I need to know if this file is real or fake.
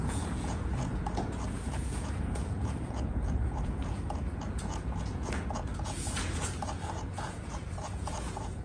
fake